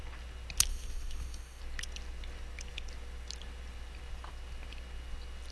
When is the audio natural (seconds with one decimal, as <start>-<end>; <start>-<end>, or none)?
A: 0.0-0.7; 1.6-5.5